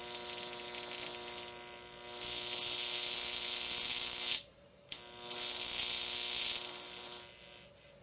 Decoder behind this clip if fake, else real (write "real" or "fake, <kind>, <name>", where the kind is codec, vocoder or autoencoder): real